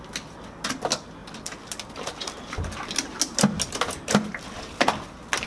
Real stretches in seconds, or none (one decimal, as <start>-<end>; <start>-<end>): 0.0-5.5